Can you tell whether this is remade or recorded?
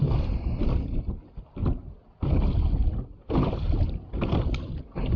recorded